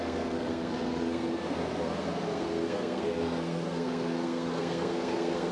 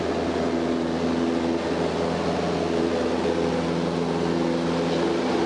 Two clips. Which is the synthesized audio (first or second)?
first